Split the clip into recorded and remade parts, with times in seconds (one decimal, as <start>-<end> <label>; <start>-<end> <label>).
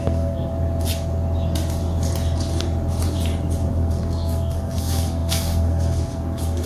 0.0-0.5 remade; 0.5-3.7 recorded; 3.7-6.7 remade